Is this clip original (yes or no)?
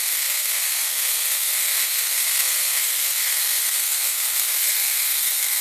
no